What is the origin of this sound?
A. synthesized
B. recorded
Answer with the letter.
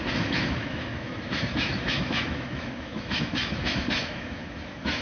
A